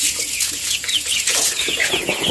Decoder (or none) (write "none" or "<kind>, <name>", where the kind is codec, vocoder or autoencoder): vocoder, Vocos